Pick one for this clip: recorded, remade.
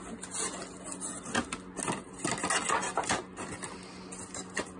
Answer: recorded